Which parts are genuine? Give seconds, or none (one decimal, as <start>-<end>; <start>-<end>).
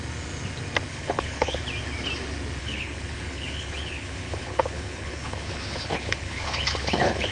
0.0-0.9; 1.6-2.6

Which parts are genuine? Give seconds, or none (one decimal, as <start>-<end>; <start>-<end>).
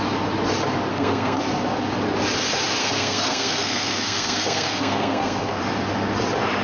0.0-0.9; 1.4-2.8; 5.6-6.6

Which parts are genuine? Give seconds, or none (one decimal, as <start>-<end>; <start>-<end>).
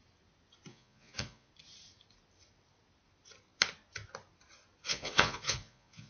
0.0-0.7; 1.5-4.9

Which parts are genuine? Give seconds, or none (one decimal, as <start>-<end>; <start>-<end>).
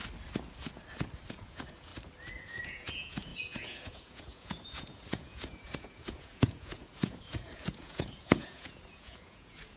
0.0-1.3; 1.9-2.4